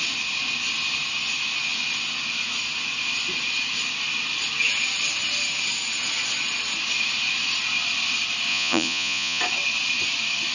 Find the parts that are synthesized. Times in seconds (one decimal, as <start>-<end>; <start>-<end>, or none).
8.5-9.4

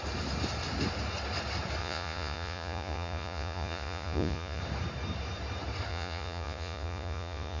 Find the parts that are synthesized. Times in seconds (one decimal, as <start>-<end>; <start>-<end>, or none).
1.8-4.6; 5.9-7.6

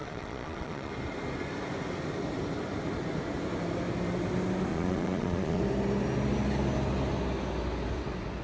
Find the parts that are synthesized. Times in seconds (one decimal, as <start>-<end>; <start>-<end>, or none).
0.0-0.9; 4.7-5.6